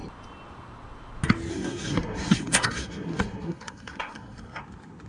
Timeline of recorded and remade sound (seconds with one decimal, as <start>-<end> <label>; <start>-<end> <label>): 0.0-1.5 recorded; 1.5-4.6 remade; 4.6-5.1 recorded